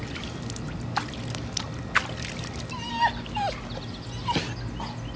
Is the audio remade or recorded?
recorded